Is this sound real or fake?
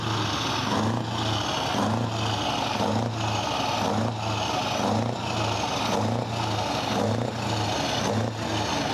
real